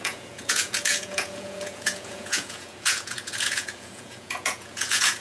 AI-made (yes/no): yes